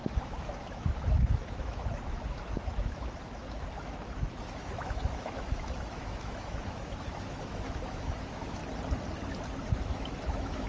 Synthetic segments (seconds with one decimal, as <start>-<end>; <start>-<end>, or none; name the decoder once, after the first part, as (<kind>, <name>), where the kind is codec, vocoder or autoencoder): 0.0-8.6 (autoencoder, DAC-VAE); 9.7-10.7